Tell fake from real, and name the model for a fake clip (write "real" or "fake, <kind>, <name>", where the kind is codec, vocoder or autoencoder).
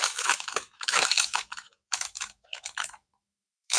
fake, autoencoder, DAC-VAE